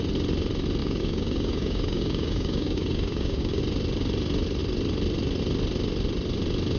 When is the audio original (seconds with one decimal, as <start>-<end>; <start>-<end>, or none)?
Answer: 0.0-0.8; 3.6-6.8